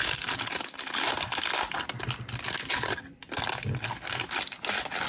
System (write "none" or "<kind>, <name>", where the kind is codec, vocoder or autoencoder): none